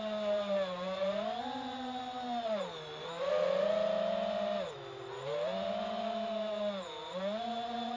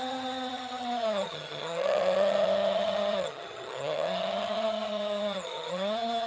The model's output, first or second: second